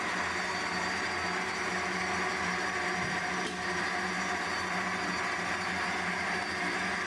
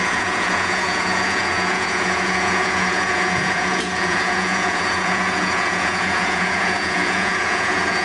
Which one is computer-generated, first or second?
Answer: second